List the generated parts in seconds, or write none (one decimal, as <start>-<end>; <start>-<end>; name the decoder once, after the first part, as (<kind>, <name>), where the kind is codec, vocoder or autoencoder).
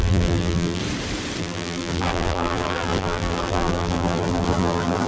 0.0-0.8 (vocoder, BigVGAN v2); 1.4-5.1